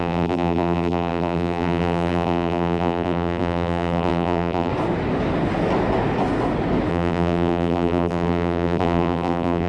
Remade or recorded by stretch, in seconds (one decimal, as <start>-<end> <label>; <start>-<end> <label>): 0.0-4.7 remade; 4.7-6.9 recorded; 6.9-9.7 remade

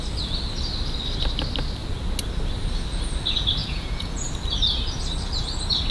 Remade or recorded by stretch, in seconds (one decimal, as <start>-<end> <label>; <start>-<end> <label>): 0.0-3.6 recorded; 3.6-4.3 remade; 4.3-5.9 recorded

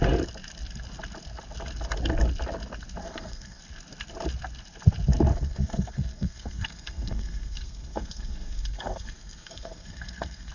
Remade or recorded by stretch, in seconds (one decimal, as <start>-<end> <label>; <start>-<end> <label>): 0.0-3.0 recorded; 3.0-3.6 remade; 3.6-5.3 recorded; 5.3-10.5 remade

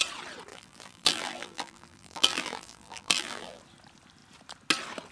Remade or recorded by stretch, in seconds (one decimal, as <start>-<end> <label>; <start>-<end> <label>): 0.0-0.5 recorded; 0.5-3.6 remade; 3.6-5.1 recorded

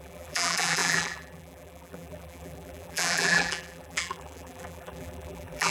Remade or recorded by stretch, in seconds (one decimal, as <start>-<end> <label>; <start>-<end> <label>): 0.0-5.7 remade

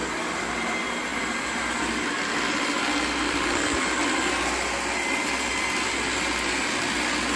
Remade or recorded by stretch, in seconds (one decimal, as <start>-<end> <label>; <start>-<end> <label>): 0.0-1.1 recorded; 1.1-5.5 remade; 5.5-7.4 recorded

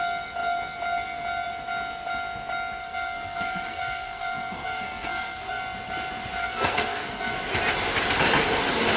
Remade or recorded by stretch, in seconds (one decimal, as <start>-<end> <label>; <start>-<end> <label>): 0.0-2.8 recorded; 2.8-5.6 remade; 5.6-6.4 recorded; 6.4-7.3 remade; 7.3-9.0 recorded

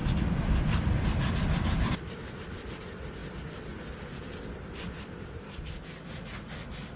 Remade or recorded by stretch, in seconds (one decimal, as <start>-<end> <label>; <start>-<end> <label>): 0.0-7.0 recorded